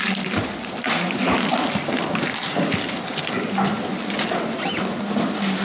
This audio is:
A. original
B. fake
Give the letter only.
A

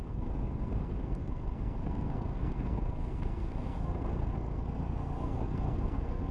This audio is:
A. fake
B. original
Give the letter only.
A